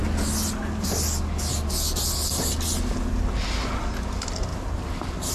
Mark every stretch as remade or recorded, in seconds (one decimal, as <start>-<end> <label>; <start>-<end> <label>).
0.0-4.5 recorded; 4.5-5.3 remade